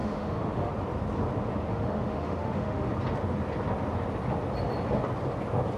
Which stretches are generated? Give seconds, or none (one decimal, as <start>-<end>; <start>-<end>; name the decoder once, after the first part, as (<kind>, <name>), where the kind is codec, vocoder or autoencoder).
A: 0.0-0.7 (autoencoder, DAC-VAE); 1.7-2.9